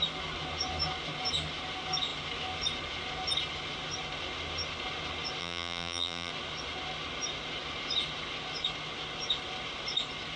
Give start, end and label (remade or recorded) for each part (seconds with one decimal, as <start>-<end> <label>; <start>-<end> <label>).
0.0-5.4 recorded; 5.4-6.3 remade; 6.3-10.4 recorded